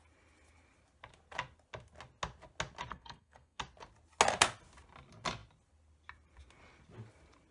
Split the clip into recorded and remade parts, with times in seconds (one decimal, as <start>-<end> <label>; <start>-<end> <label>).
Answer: 0.0-2.9 recorded; 2.9-3.6 remade; 3.6-7.5 recorded